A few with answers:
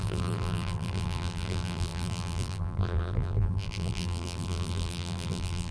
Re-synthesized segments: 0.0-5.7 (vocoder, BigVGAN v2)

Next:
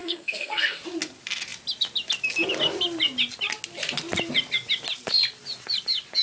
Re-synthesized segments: 0.0-0.8 (codec, SNAC)

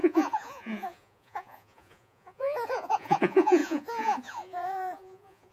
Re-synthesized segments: 0.0-5.5 (vocoder, Vocos)

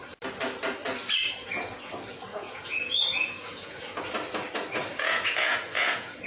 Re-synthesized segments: 1.4-1.9 (vocoder, Vocos); 2.3-4.0; 4.8-6.3

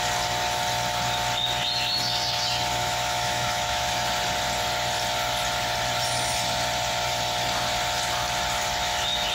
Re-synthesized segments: 2.7-3.9 (autoencoder, DAC-VAE)

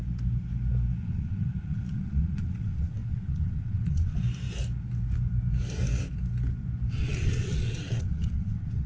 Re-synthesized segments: 1.0-4.2 (vocoder, WaveNeXt); 6.9-8.9

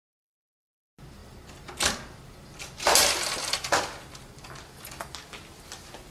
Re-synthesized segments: none